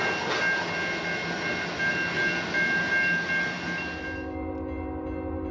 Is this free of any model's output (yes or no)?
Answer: yes